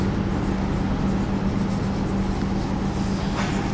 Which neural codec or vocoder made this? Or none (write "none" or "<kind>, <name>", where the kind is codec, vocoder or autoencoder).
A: none